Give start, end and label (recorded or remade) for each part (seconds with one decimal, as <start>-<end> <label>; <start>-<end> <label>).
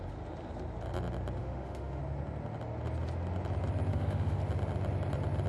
0.0-1.4 recorded; 1.4-2.0 remade; 2.0-3.9 recorded; 3.9-4.4 remade; 4.4-5.5 recorded